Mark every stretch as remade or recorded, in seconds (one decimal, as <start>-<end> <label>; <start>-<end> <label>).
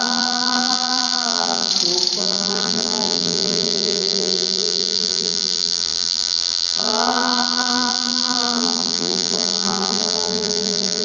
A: 0.0-1.7 remade; 1.7-2.2 recorded; 2.2-11.0 remade